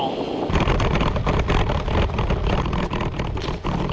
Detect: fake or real real